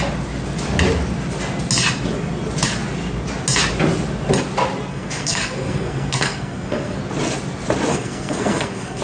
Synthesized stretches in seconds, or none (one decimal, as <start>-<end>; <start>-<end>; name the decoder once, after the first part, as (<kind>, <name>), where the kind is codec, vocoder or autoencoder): 4.9-7.0 (codec, SNAC); 7.9-9.0